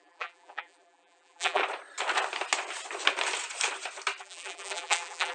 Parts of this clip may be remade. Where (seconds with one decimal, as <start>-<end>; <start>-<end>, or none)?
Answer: 0.0-1.6; 4.2-5.3